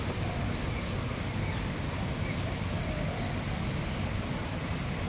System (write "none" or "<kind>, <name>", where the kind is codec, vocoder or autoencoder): none